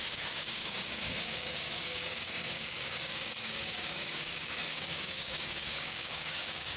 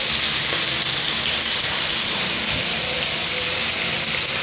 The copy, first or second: first